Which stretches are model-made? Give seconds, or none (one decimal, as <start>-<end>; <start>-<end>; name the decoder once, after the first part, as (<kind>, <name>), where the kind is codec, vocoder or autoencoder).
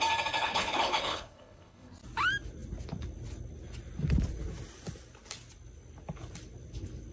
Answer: 0.4-1.9 (codec, HILCodec)